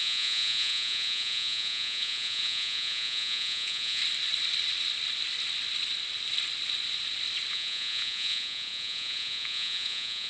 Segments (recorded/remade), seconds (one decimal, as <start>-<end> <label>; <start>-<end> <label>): 0.0-4.0 remade; 4.0-7.5 recorded; 7.5-10.3 remade